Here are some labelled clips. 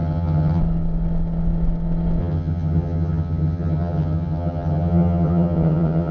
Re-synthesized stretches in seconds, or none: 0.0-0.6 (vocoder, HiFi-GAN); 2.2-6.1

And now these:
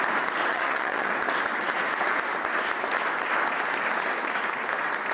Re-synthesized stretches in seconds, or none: 0.5-1.1 (vocoder, HiFi-GAN)

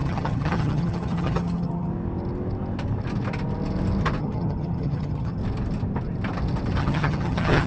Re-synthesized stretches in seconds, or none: 0.0-1.9 (vocoder, HiFi-GAN); 4.2-5.4; 6.8-7.7